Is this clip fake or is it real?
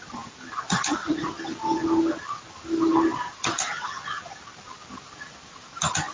real